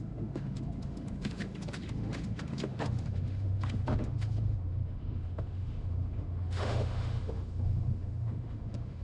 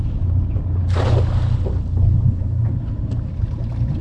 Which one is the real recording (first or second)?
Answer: second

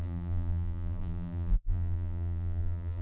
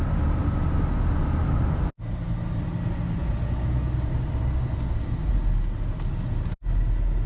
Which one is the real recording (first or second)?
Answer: second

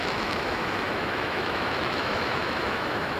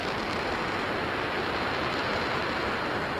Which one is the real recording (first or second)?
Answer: second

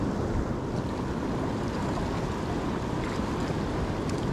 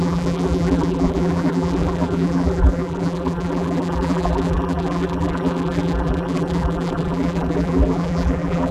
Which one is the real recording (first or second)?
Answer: first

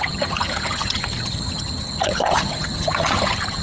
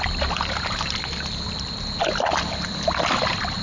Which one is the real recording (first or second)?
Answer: second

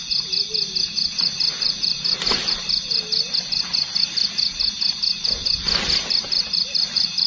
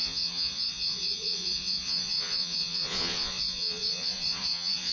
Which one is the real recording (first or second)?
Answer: first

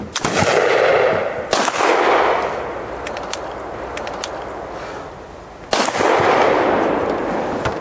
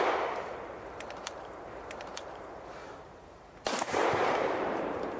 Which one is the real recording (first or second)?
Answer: first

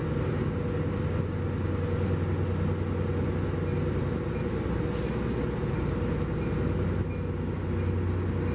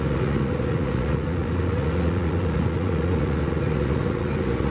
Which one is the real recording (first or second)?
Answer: first